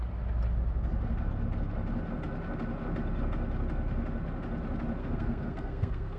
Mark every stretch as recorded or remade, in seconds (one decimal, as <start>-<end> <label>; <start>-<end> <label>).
0.0-5.0 recorded; 5.0-6.2 remade

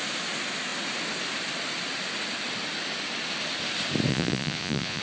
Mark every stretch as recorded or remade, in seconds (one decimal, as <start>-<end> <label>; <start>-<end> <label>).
0.0-4.1 recorded; 4.1-5.0 remade